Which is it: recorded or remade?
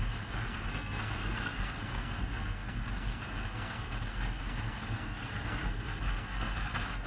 remade